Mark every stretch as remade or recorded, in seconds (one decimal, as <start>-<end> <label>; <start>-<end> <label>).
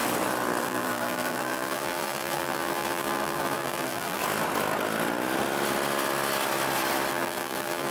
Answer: 0.0-0.6 recorded; 0.6-4.2 remade; 4.2-7.1 recorded; 7.1-7.9 remade